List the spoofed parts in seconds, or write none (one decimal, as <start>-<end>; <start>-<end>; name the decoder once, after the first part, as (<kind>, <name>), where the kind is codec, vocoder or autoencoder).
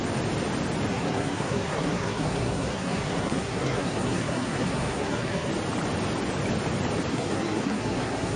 0.9-5.5 (codec, SNAC); 7.1-8.4